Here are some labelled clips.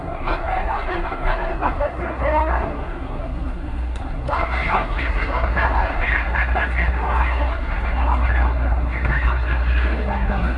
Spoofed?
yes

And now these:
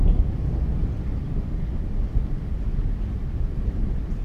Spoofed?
no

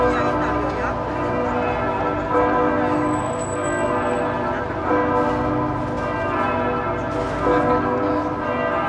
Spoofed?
no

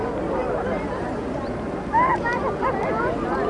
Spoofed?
no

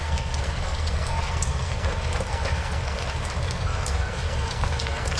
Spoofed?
yes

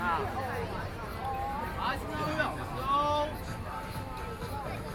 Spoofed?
no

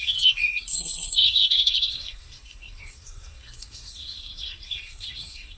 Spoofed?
yes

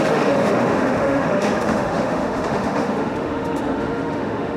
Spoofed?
yes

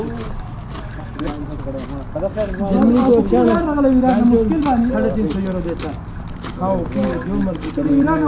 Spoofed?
no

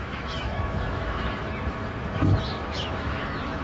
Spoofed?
yes